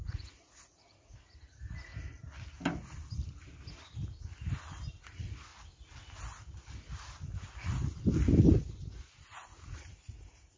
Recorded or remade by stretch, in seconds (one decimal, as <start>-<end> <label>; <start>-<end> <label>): 0.0-1.9 remade; 1.9-5.0 recorded; 5.0-5.5 remade; 5.5-9.0 recorded; 9.0-10.6 remade